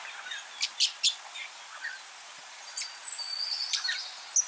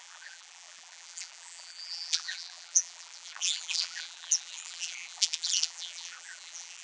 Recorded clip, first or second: first